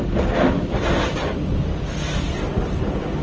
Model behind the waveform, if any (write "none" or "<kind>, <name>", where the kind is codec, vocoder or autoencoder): none